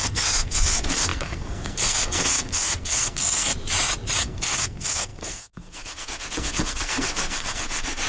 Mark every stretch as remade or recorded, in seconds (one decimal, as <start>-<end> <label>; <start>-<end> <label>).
0.0-3.5 remade; 3.5-4.2 recorded; 4.2-8.1 remade